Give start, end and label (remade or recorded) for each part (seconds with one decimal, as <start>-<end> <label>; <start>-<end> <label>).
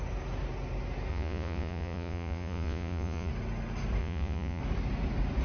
0.0-1.1 recorded; 1.1-3.3 remade; 3.3-4.0 recorded; 4.0-4.6 remade; 4.6-5.4 recorded